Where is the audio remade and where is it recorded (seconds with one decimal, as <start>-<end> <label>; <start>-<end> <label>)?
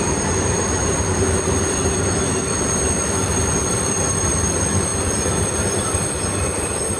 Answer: 0.0-7.0 recorded